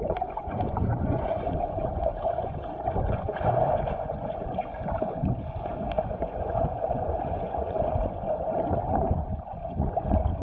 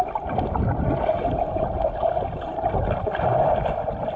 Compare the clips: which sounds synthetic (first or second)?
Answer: first